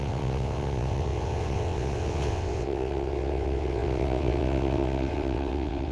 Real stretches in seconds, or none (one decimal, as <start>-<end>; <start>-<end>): none

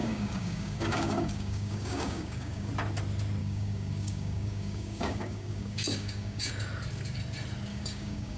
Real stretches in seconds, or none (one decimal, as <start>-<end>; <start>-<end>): 2.7-3.4; 6.5-7.7

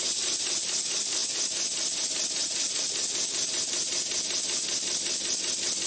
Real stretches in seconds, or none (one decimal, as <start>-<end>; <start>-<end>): 0.0-5.9

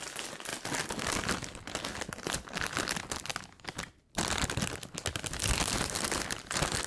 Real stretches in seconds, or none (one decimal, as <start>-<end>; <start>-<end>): 0.0-6.9

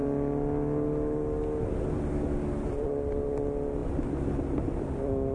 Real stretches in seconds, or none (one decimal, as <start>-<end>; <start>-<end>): 0.0-5.3

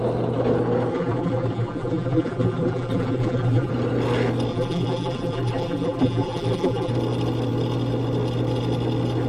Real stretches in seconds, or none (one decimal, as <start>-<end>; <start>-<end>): 0.0-0.9; 3.7-4.5; 6.9-9.3

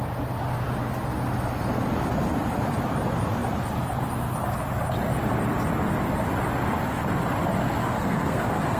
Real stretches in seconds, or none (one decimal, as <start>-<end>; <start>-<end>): 0.0-7.8

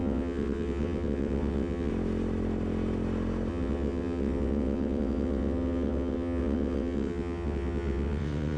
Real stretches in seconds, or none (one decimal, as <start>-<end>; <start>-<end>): 1.9-3.5